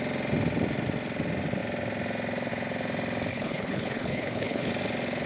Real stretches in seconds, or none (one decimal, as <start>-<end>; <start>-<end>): 0.0-3.3; 4.7-5.3

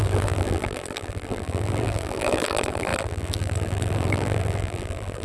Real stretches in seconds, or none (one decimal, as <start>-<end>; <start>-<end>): none

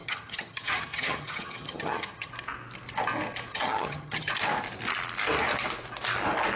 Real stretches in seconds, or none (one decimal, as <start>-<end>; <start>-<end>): 2.3-3.5; 4.3-6.6

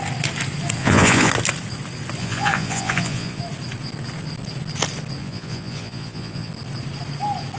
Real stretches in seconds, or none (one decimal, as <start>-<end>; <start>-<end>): 0.0-0.8; 1.3-2.2; 3.4-5.2; 6.5-7.6

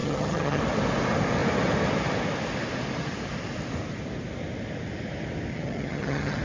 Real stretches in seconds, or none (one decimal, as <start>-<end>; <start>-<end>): 0.6-5.5

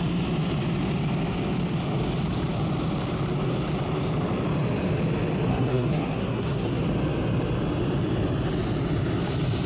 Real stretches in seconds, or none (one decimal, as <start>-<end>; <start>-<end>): 0.0-5.5; 6.8-9.7